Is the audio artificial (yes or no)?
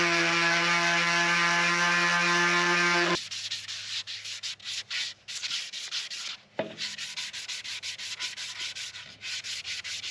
no